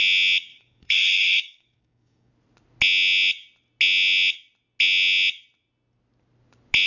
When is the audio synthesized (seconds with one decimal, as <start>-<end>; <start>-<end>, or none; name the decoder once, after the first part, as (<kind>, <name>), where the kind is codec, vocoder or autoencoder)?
0.5-2.3 (codec, DAC)